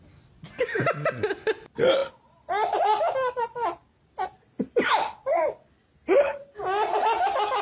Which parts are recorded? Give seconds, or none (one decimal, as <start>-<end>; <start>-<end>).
0.0-7.6